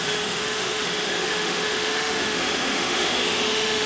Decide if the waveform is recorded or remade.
remade